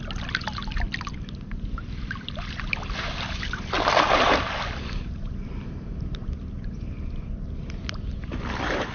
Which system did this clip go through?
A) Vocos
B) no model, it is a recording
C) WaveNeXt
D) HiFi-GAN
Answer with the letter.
B